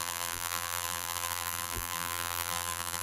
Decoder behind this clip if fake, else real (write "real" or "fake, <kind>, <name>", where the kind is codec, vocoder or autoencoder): fake, vocoder, BigVGAN v2